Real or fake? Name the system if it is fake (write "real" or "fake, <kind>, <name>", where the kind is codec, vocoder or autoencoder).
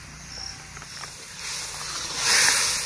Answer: real